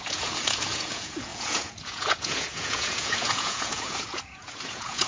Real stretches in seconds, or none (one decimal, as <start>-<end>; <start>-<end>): none